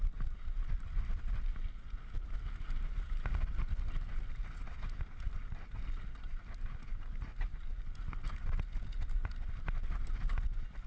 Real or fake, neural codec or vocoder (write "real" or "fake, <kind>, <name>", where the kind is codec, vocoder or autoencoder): real